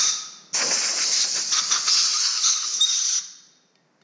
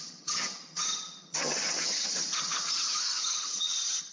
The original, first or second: first